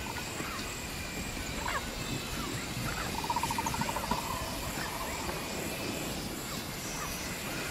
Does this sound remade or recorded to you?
recorded